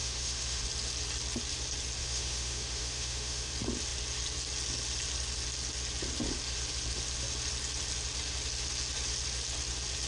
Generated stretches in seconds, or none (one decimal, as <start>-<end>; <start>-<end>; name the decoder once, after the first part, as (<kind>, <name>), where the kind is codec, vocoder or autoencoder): 0.0-0.6 (autoencoder, DAC-VAE); 2.0-3.5